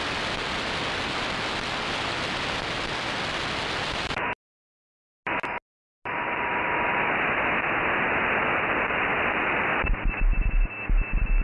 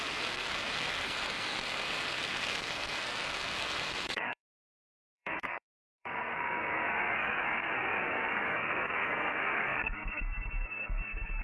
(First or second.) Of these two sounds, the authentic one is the first